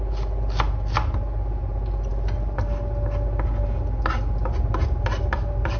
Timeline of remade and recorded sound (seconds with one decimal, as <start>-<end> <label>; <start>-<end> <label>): 0.0-5.8 recorded